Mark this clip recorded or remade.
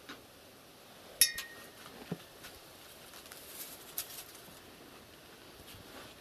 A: recorded